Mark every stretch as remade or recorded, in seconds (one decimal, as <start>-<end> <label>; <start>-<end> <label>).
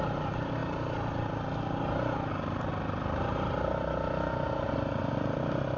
0.0-5.8 recorded